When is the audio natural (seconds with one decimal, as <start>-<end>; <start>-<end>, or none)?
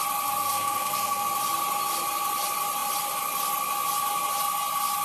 0.0-0.4; 1.2-5.0